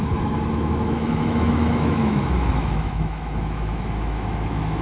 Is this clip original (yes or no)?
no